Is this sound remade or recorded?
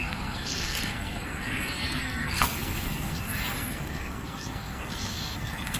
remade